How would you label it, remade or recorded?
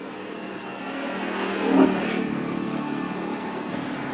remade